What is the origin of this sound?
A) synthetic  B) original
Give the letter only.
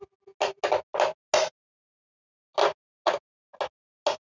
B